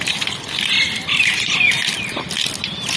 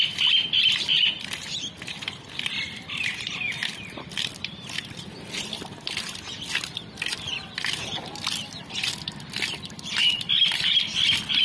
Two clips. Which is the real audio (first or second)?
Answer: first